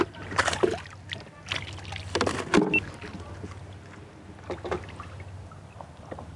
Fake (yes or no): no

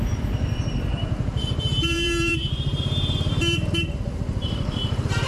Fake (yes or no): yes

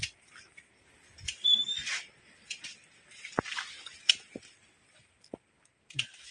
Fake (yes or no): no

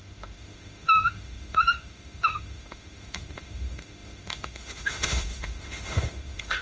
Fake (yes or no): yes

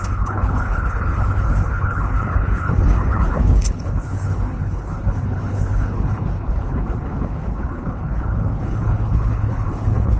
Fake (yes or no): yes